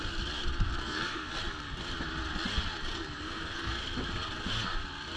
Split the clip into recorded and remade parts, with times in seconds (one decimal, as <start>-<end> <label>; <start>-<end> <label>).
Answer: 0.0-0.8 recorded; 0.8-1.4 remade; 1.4-2.9 recorded; 2.9-3.8 remade; 3.8-5.2 recorded